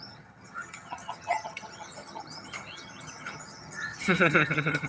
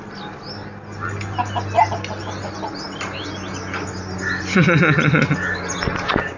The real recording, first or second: second